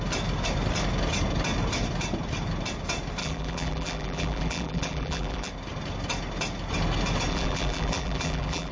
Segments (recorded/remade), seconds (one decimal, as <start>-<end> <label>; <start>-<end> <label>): 0.0-3.2 recorded; 3.2-5.5 remade; 5.5-7.3 recorded; 7.3-8.7 remade

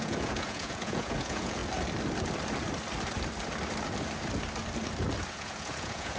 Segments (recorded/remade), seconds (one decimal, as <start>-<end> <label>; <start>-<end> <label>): 0.0-1.6 remade; 1.6-5.3 recorded; 5.3-6.2 remade

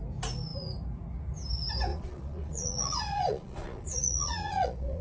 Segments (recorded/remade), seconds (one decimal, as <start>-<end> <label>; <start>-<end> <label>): 0.0-1.9 recorded; 1.9-5.0 remade

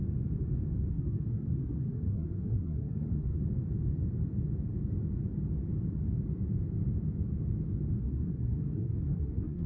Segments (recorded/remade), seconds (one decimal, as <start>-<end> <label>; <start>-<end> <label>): 0.0-0.9 recorded; 0.9-3.4 remade; 3.4-8.0 recorded; 8.0-9.7 remade

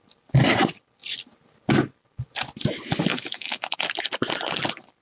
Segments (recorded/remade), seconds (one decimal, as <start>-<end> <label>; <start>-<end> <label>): 0.0-3.1 recorded; 3.1-3.8 remade; 3.8-5.0 recorded

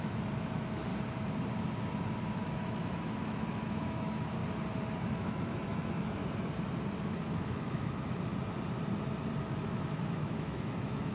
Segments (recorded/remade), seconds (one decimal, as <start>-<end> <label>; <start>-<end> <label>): 0.0-0.9 remade; 0.9-2.4 recorded; 2.4-4.4 remade; 4.4-5.1 recorded; 5.1-6.2 remade; 6.2-7.0 recorded; 7.0-8.3 remade; 8.3-9.4 recorded; 9.4-11.1 remade

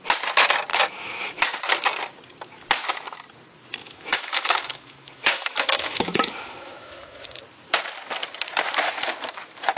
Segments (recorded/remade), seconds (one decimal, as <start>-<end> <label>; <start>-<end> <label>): 0.0-0.7 recorded; 0.7-1.4 remade; 1.4-3.8 recorded; 3.8-7.4 remade; 7.4-9.8 recorded